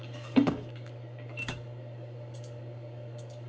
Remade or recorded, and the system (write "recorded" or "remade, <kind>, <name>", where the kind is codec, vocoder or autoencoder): remade, codec, DAC